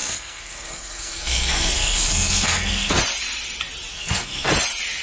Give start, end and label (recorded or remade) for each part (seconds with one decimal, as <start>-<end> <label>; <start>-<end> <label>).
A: 0.0-3.0 remade; 3.0-3.9 recorded; 3.9-4.5 remade; 4.5-5.0 recorded